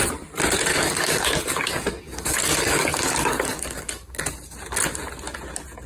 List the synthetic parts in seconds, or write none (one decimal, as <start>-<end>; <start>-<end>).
0.7-4.2